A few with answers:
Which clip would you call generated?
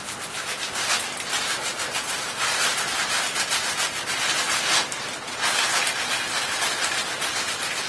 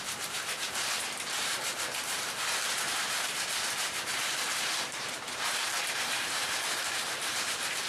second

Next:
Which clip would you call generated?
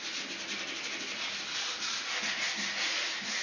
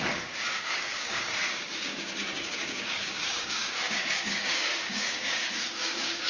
second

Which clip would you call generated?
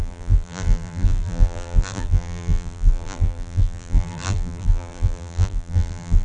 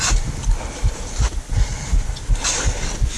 first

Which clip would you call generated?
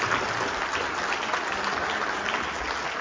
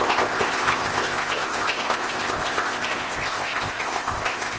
second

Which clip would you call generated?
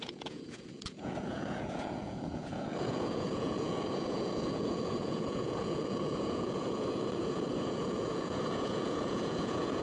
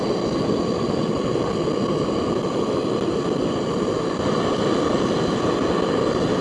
first